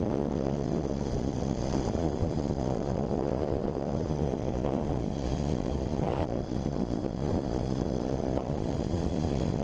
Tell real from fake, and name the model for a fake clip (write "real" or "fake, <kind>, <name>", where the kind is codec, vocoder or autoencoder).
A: fake, vocoder, Vocos